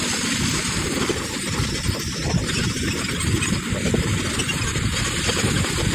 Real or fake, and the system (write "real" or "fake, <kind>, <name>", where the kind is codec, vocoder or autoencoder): real